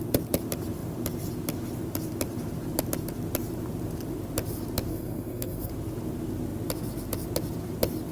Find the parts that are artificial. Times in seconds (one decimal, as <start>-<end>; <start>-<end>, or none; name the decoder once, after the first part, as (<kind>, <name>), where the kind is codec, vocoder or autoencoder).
4.9-5.7 (codec, SNAC)